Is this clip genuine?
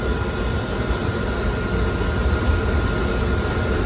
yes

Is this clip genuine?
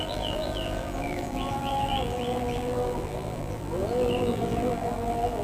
no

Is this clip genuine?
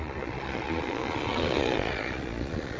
no